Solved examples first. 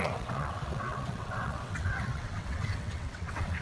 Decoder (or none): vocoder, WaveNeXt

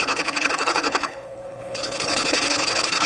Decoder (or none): codec, HILCodec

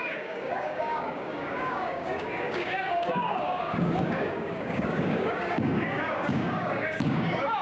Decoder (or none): codec, DAC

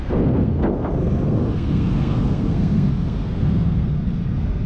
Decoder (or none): codec, SNAC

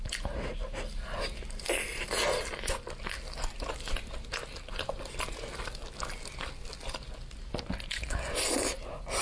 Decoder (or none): none